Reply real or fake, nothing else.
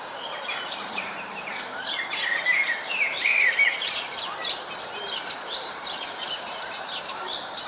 fake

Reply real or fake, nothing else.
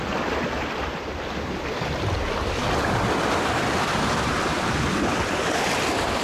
fake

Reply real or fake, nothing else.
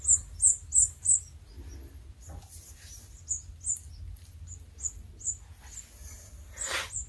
real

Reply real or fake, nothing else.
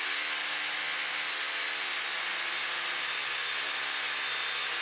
real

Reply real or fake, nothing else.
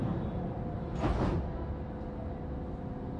real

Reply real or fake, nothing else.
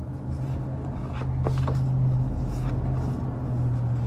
real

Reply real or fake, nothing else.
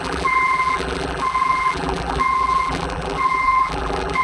fake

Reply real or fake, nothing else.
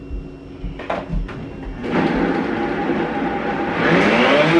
real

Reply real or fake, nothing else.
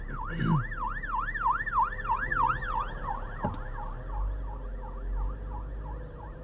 real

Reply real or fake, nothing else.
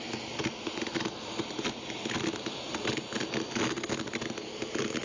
real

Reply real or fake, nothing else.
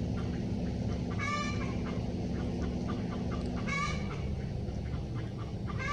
real